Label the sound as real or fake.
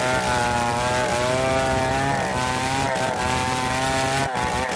real